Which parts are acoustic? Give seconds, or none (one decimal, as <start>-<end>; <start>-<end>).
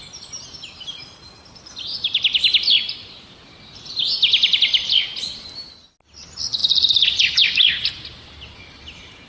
0.0-9.3